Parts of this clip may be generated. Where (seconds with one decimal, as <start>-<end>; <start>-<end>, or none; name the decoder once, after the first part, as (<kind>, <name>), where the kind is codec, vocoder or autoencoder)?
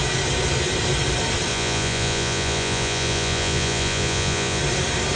1.5-4.6 (vocoder, Vocos)